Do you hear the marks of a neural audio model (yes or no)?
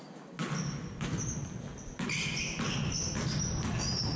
no